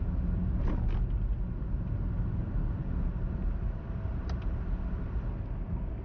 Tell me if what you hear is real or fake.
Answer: real